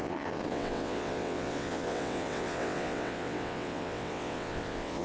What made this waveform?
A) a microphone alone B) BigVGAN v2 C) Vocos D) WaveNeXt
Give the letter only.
D